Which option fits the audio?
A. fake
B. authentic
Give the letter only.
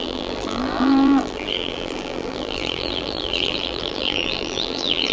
A